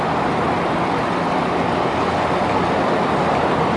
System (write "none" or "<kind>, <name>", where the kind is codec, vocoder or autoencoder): none